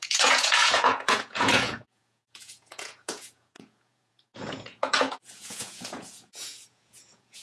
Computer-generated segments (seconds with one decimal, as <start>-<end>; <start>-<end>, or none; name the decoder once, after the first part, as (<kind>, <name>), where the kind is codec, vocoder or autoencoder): 0.0-7.4 (vocoder, Vocos)